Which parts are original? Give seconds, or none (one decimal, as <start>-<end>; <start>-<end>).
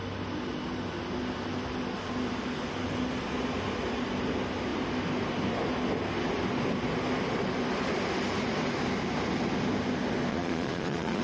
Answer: 0.0-10.3